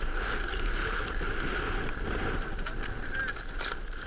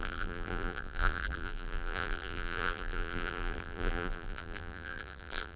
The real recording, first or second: first